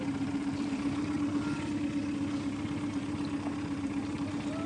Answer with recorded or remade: recorded